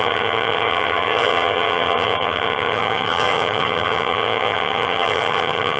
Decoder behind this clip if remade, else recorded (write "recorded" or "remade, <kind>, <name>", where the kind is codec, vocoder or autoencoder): remade, vocoder, HiFi-GAN